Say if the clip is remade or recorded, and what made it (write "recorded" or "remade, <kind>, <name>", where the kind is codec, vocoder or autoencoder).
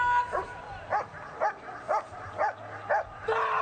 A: recorded